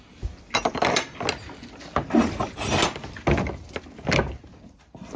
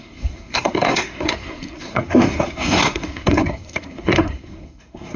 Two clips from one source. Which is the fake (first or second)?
second